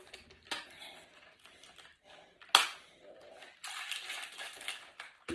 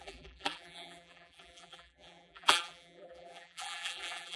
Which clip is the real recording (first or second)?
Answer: first